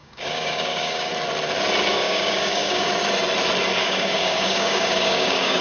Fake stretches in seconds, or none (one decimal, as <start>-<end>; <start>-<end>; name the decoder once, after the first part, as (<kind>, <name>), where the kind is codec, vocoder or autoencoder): 0.0-1.1 (codec, DAC); 1.9-2.9; 3.8-5.6